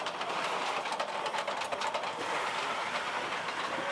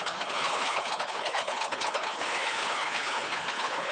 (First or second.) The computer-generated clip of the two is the second